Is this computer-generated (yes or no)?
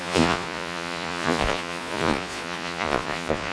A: yes